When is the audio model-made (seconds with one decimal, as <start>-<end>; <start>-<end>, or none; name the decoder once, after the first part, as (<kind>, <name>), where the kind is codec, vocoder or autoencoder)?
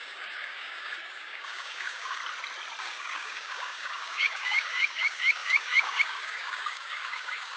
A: 0.0-2.2 (codec, DAC); 2.8-7.6